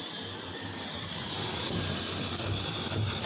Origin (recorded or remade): remade